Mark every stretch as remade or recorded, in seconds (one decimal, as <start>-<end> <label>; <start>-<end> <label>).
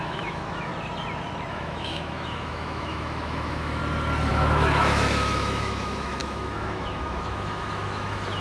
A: 0.0-0.7 remade; 0.7-1.5 recorded; 1.5-3.8 remade; 3.8-4.3 recorded; 4.3-8.4 remade